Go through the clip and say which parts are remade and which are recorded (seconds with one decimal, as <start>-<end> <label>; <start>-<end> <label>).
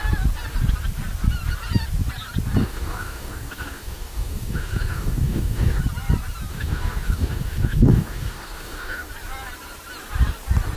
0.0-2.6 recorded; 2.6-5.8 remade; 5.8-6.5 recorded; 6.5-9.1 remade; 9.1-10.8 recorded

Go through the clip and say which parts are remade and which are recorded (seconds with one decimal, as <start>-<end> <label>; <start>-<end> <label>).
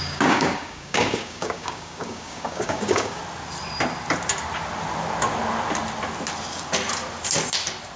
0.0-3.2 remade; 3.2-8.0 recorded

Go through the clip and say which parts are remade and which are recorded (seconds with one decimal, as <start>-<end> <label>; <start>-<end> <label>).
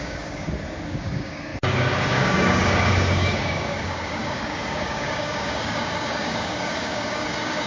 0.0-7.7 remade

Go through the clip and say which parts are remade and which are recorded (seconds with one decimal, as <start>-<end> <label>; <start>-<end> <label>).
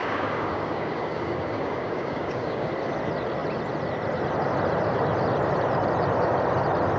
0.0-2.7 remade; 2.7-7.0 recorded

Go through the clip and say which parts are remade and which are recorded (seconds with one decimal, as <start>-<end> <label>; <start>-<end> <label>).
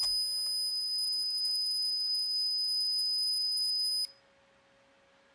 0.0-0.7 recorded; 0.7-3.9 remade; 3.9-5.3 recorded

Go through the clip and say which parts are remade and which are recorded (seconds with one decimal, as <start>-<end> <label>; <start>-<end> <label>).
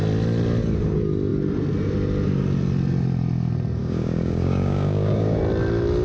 0.0-3.8 recorded; 3.8-5.4 remade; 5.4-6.0 recorded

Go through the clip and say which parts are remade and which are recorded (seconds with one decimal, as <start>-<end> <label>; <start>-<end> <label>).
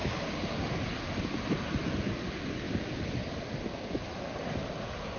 0.0-0.8 remade; 0.8-5.2 recorded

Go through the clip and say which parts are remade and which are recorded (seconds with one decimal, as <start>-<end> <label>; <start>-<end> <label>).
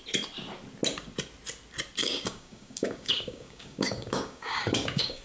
0.0-2.0 recorded; 2.0-5.2 remade